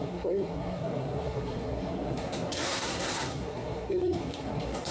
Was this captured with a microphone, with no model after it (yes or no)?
no